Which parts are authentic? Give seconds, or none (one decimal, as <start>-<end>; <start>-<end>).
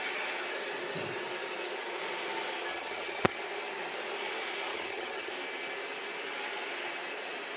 0.0-2.7; 3.4-4.7; 5.3-7.6